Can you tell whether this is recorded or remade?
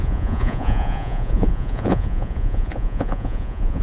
remade